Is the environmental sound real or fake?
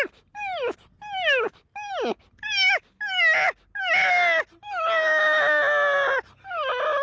real